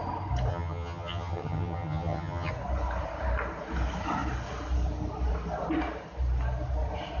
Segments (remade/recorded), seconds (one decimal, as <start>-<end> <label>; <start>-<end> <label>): 0.0-0.5 recorded; 0.5-2.5 remade; 2.5-7.2 recorded